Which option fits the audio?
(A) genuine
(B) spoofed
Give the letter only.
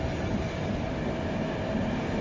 A